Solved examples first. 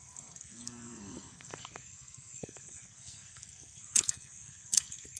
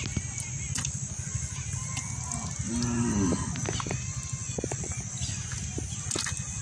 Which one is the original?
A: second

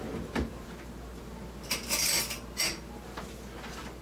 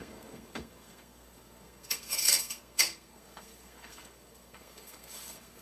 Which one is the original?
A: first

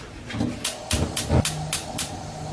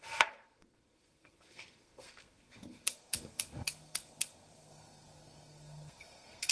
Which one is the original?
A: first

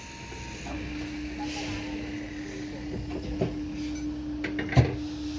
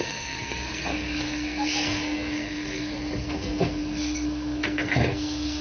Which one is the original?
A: first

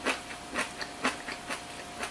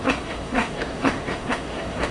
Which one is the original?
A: first